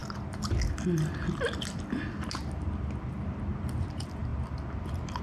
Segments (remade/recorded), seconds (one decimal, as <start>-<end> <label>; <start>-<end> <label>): 0.0-5.2 recorded